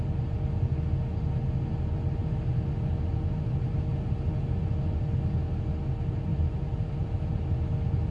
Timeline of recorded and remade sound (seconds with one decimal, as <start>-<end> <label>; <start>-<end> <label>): 0.0-6.3 recorded; 6.3-7.4 remade; 7.4-8.1 recorded